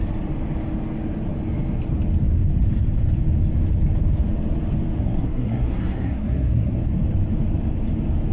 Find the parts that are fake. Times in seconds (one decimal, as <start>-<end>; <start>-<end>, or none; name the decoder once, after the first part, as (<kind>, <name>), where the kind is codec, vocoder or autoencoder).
5.0-6.8 (codec, SNAC)